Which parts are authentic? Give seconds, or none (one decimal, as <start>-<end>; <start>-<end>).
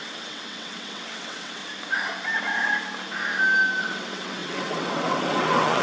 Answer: 1.6-3.8